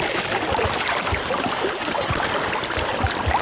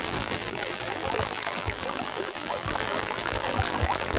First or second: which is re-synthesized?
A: second